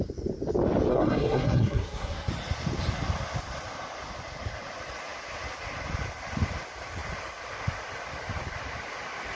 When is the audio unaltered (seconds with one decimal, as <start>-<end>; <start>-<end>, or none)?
0.0-0.9; 2.3-9.4